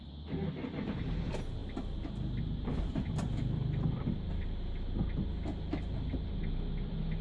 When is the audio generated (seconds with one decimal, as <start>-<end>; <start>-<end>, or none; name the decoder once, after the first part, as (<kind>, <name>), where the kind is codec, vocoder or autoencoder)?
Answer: none